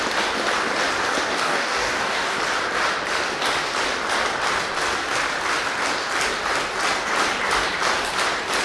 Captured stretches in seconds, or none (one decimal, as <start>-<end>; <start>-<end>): 0.0-1.3; 2.4-8.6